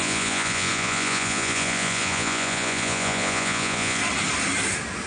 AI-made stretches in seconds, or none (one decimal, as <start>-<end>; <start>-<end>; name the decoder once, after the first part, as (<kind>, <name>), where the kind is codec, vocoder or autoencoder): 0.0-4.0 (vocoder, Vocos)